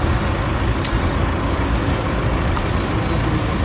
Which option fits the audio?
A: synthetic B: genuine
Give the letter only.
B